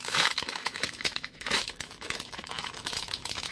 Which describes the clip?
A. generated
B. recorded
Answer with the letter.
A